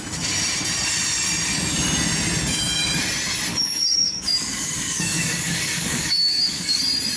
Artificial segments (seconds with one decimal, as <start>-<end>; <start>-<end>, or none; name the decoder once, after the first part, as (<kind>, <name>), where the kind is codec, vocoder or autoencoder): 3.5-6.8 (codec, DAC)